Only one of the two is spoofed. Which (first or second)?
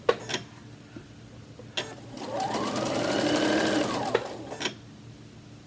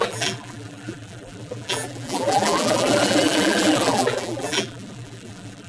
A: second